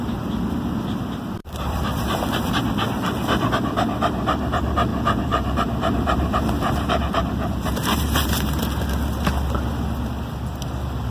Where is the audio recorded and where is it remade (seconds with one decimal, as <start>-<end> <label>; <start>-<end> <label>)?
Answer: 0.0-1.4 recorded; 1.4-2.5 remade; 2.5-4.9 recorded; 4.9-8.6 remade; 8.6-11.1 recorded